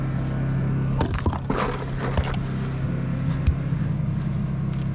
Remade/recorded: recorded